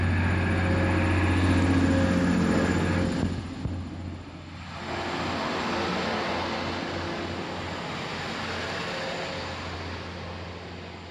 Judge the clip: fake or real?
real